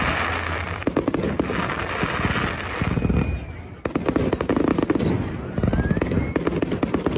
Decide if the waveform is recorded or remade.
recorded